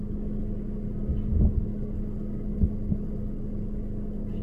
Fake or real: real